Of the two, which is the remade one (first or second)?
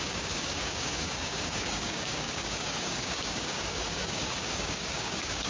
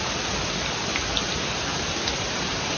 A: first